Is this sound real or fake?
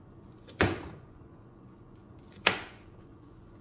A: fake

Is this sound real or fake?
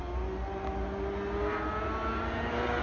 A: real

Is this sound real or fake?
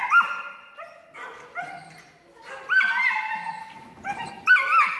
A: real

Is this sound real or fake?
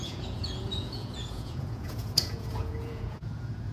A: fake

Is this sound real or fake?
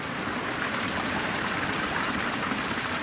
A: real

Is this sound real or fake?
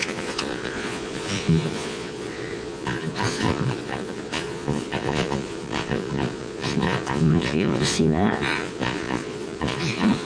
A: fake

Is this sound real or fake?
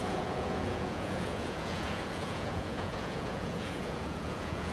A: fake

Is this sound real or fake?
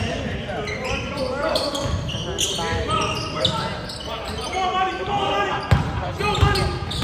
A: real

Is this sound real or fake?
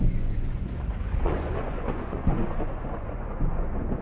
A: fake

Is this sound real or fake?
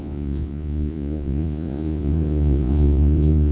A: fake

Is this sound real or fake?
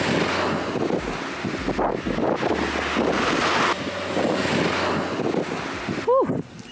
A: real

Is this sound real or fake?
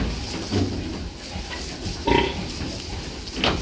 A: real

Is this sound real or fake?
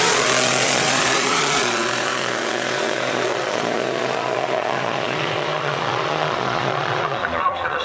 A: fake